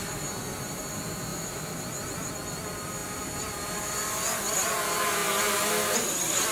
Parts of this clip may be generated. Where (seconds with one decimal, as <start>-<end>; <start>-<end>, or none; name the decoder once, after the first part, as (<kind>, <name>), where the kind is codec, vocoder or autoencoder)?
1.3-2.3 (vocoder, BigVGAN v2)